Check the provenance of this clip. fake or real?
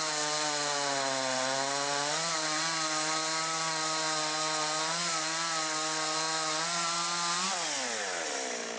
real